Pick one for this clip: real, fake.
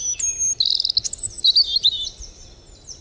real